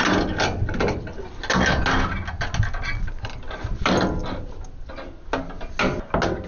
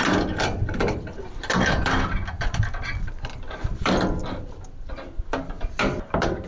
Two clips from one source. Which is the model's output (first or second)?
second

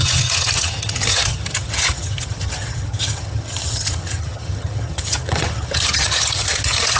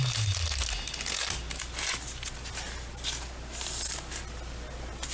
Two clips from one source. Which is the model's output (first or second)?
first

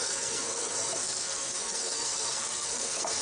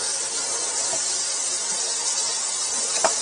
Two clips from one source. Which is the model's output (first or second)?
first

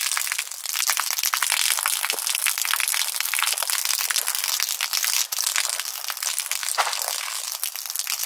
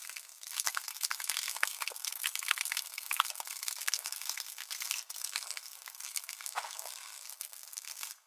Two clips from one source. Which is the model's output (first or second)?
second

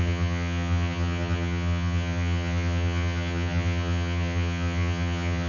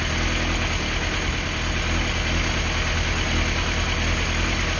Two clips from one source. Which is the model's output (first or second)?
first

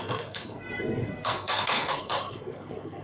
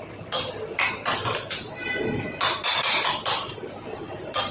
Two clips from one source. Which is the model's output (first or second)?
first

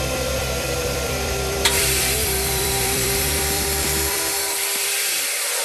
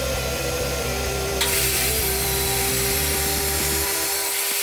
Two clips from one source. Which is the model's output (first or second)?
first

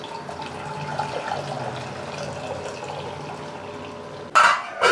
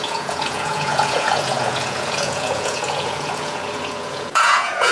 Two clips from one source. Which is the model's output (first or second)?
second